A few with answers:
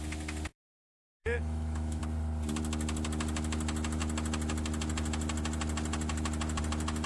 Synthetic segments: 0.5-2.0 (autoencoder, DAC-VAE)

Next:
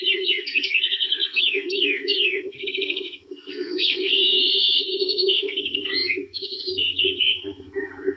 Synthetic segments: 0.0-8.2 (codec, SNAC)

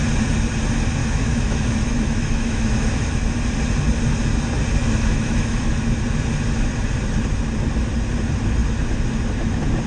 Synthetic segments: 1.0-3.2 (autoencoder, DAC-VAE); 4.8-5.8